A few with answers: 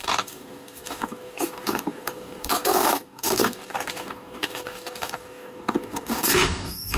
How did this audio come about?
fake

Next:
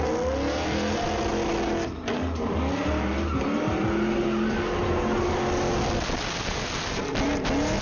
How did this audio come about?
real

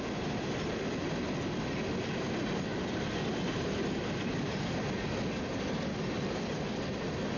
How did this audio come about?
real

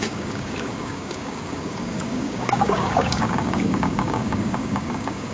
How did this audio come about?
fake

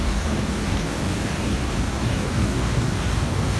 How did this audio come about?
fake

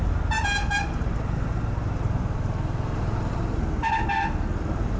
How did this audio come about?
real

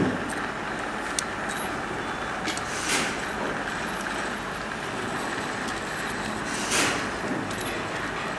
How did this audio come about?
real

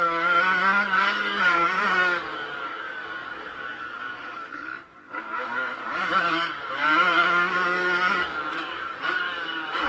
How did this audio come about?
fake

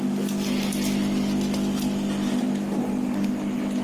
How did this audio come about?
real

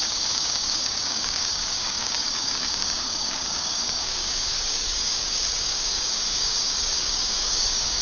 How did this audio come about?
fake